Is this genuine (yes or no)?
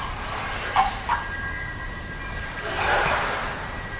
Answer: yes